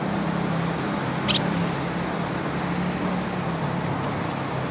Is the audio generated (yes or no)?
no